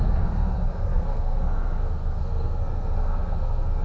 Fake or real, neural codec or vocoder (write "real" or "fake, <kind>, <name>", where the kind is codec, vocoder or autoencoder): fake, codec, SNAC